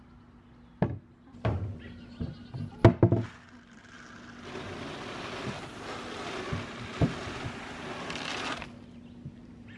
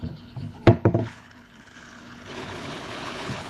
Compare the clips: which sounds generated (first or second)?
second